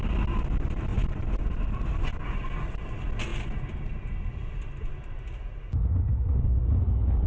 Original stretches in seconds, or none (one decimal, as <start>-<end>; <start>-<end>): 0.0-5.9; 6.8-7.3